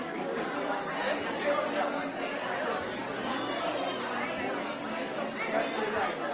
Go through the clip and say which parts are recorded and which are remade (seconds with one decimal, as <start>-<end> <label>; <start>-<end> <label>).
0.0-2.3 recorded; 2.3-3.3 remade; 3.3-6.3 recorded